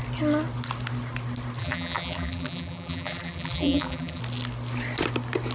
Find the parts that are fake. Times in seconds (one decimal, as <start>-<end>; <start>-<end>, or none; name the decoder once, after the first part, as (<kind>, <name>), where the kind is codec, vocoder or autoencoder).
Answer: 1.6-4.2 (vocoder, BigVGAN v2)